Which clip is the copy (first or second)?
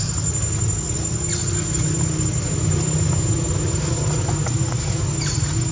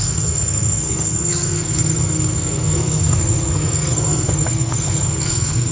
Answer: second